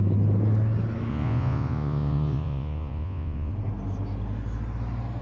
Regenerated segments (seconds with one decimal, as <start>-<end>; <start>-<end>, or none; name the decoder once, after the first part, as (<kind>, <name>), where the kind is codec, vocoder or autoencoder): 1.1-3.5 (vocoder, Vocos)